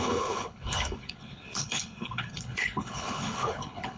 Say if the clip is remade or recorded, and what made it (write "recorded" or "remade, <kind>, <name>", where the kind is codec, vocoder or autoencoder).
remade, codec, HILCodec